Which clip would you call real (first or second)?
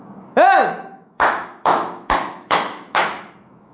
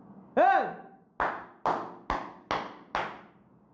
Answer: second